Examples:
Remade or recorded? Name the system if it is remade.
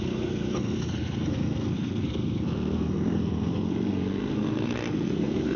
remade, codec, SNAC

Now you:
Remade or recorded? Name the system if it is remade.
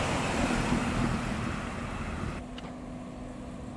recorded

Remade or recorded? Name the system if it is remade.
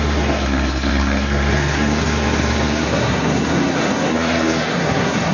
remade, codec, SNAC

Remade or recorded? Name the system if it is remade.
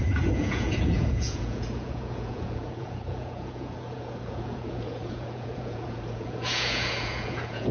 remade, vocoder, Vocos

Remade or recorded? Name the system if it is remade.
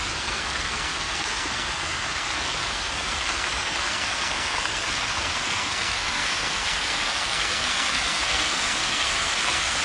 remade, codec, SNAC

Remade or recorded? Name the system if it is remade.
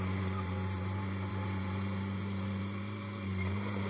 remade, vocoder, BigVGAN v2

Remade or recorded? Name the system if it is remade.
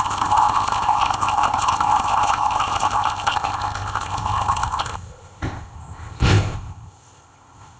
remade, codec, ZipCodec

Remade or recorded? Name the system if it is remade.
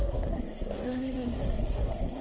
remade, codec, SNAC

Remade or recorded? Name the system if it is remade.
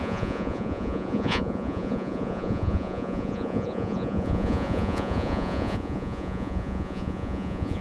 remade, vocoder, Vocos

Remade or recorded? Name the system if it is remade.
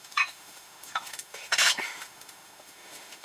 remade, autoencoder, DAC-VAE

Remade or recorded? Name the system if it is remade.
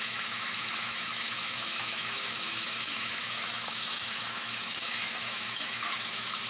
remade, autoencoder, DAC-VAE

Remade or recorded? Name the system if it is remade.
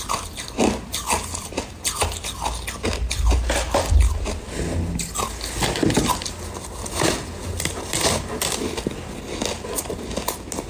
recorded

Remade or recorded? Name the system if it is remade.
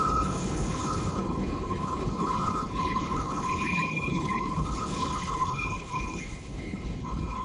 remade, codec, HILCodec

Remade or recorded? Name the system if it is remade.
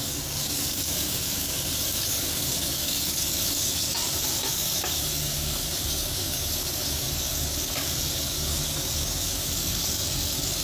remade, codec, DAC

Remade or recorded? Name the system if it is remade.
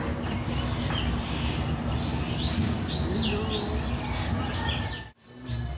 recorded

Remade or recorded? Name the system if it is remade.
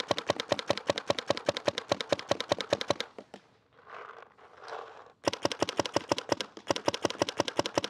recorded